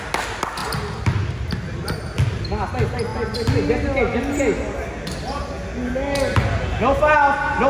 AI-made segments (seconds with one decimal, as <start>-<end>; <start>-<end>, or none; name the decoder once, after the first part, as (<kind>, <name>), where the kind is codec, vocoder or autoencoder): none